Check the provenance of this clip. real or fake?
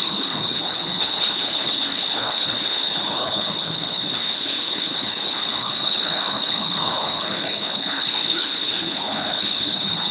fake